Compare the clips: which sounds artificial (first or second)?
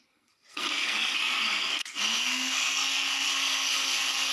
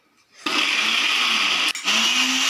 first